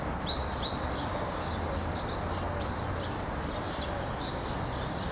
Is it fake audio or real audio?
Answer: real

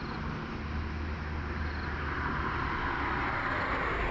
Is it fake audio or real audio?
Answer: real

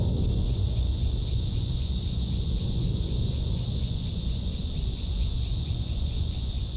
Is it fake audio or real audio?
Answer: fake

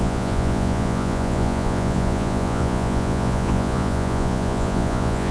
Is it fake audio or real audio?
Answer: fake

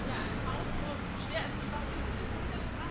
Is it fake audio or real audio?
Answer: real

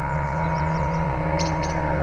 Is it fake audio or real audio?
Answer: fake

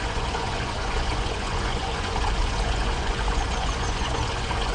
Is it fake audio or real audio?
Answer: fake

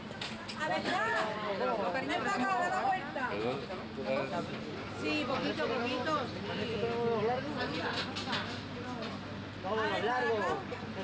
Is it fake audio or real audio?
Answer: real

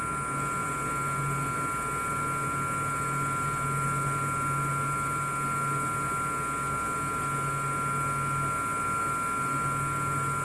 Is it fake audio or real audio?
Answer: real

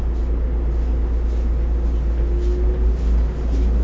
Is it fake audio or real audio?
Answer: real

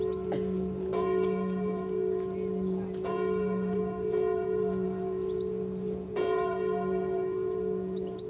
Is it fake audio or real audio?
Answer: fake